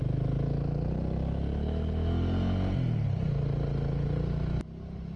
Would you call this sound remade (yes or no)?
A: no